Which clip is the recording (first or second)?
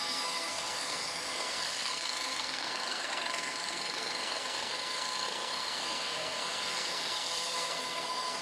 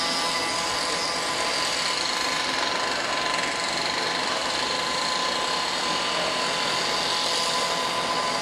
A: second